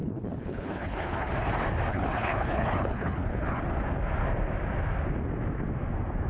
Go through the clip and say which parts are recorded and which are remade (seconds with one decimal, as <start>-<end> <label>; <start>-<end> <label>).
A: 0.0-1.3 remade; 1.3-1.9 recorded; 1.9-3.6 remade; 3.6-6.3 recorded